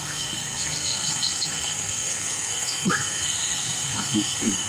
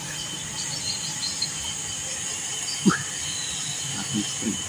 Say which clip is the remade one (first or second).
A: first